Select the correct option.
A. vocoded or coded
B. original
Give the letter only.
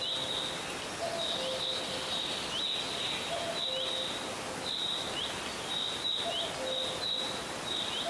B